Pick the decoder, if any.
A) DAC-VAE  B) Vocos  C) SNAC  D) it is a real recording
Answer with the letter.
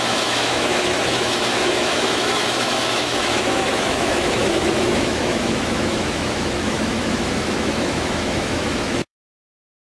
A